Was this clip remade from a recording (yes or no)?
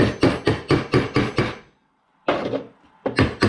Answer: no